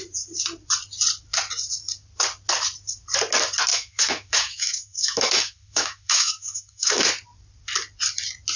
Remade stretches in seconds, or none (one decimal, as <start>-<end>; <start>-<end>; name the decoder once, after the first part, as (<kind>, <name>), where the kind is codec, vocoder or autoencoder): 3.7-7.1 (autoencoder, DAC-VAE)